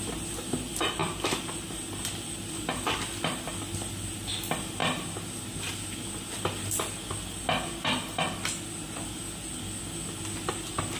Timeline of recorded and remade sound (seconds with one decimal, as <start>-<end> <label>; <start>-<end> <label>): 0.0-11.0 recorded